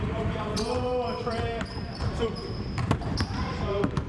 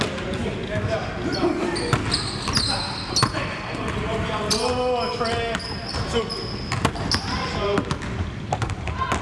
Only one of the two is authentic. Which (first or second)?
second